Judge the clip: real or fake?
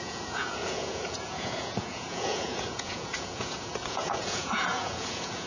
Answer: fake